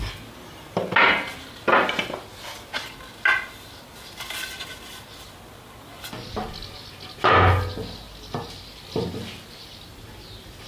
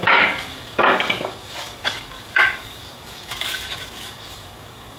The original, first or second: first